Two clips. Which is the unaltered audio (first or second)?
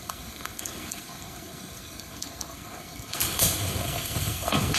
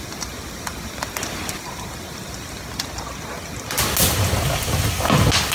second